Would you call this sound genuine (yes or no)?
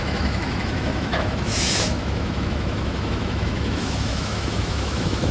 no